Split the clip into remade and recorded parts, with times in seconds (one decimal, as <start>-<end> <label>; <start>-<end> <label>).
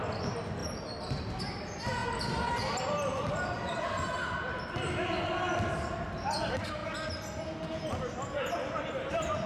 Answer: 0.0-9.5 recorded